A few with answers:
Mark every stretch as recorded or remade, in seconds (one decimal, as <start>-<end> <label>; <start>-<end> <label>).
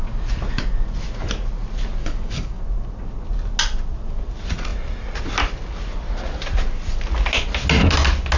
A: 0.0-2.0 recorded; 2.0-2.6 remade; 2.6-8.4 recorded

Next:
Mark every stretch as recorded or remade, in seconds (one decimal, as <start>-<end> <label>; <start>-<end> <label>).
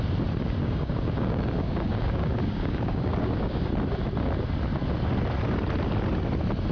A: 0.0-0.6 recorded; 0.6-3.7 remade; 3.7-6.7 recorded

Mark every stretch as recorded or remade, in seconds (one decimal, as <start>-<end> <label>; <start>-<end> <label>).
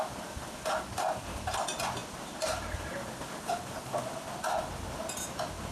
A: 0.0-5.7 recorded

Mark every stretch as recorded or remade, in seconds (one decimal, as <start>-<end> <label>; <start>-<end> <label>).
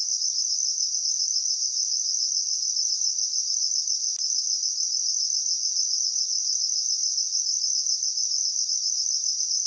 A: 0.0-9.7 recorded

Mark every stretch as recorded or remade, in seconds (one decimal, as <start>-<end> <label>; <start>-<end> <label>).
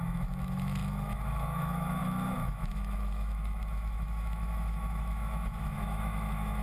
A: 0.0-6.6 remade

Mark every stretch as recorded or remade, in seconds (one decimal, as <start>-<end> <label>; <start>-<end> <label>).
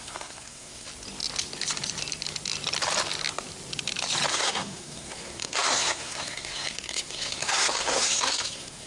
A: 0.0-0.9 remade; 0.9-4.3 recorded; 4.3-8.9 remade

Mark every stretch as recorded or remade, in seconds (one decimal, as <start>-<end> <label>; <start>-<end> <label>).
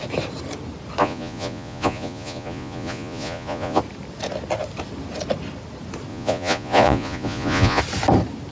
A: 0.0-1.0 recorded; 1.0-3.8 remade; 3.8-6.1 recorded; 6.1-7.8 remade; 7.8-8.5 recorded